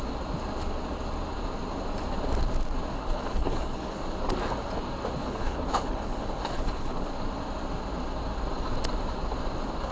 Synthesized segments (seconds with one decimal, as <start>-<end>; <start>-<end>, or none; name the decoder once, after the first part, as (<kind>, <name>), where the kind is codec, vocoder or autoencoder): 2.9-4.0 (codec, HILCodec); 5.2-7.1